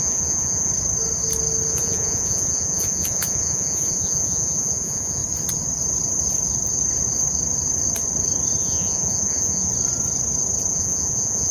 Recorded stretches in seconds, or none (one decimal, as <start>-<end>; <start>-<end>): 0.7-1.7; 5.2-8.6; 9.7-10.7